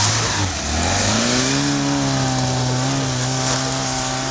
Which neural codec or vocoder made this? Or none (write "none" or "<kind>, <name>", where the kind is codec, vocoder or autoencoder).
none